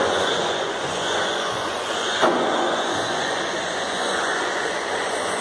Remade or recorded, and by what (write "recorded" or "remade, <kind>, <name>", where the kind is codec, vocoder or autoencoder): remade, vocoder, Vocos